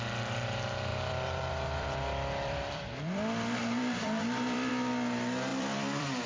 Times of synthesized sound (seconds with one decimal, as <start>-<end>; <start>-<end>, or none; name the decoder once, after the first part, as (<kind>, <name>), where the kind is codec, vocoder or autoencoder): 0.9-4.7 (vocoder, BigVGAN v2); 5.5-6.3